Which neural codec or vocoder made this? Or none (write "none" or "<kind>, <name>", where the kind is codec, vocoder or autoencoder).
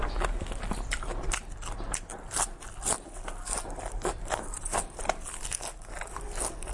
none